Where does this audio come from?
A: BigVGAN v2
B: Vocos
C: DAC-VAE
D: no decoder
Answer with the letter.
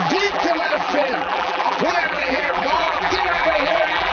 A